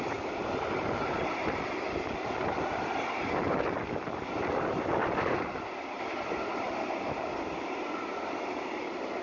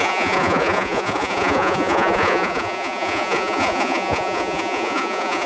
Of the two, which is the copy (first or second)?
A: second